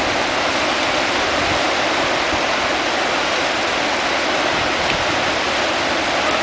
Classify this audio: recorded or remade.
recorded